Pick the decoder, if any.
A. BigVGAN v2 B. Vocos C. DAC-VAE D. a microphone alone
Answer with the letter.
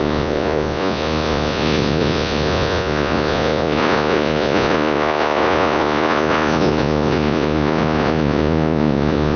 B